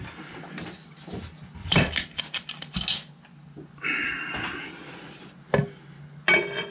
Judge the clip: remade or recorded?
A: recorded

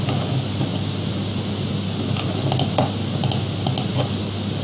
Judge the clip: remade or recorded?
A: recorded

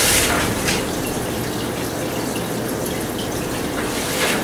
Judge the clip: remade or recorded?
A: recorded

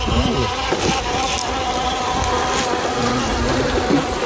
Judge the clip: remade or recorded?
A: recorded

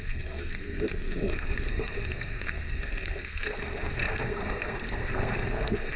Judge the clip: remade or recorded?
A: remade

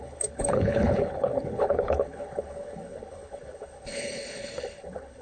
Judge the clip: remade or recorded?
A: remade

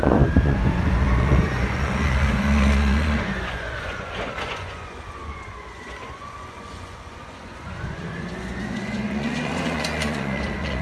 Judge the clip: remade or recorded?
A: remade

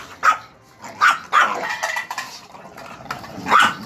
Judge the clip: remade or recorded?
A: recorded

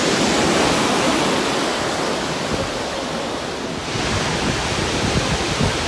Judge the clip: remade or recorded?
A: recorded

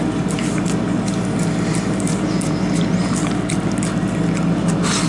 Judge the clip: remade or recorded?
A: recorded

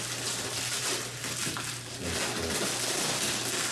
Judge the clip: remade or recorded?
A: recorded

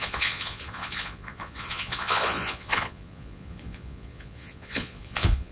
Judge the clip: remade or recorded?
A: remade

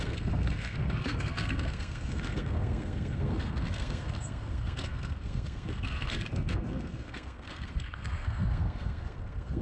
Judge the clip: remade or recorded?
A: remade